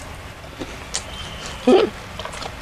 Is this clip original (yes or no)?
yes